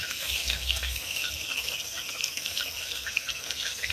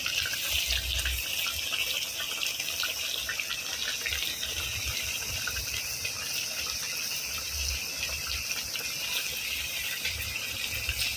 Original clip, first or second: second